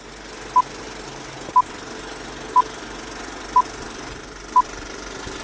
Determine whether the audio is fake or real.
real